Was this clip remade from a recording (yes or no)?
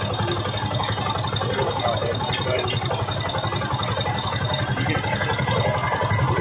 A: no